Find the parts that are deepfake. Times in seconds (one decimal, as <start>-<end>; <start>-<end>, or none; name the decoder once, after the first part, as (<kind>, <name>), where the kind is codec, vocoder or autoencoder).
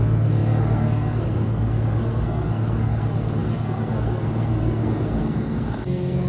0.0-6.3 (codec, SNAC)